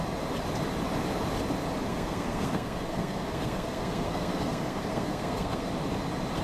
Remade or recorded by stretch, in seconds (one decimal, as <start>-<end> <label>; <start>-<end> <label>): 0.0-1.9 recorded; 1.9-5.7 remade; 5.7-6.4 recorded